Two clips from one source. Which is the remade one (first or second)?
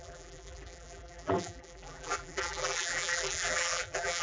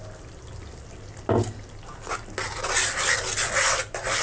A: first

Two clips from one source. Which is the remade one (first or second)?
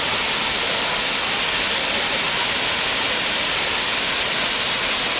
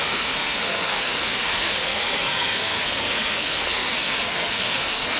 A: second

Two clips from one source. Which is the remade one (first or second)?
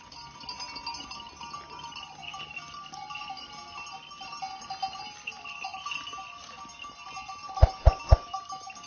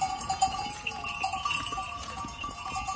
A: second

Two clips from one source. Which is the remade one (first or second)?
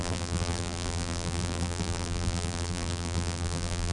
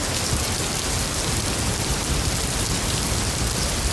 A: first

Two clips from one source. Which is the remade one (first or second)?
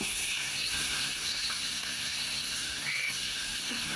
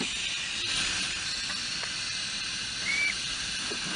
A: first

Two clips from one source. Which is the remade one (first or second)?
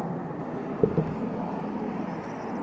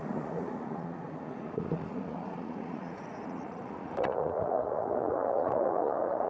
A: second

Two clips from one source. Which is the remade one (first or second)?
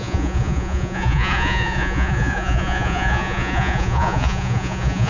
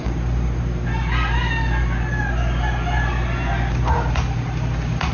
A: first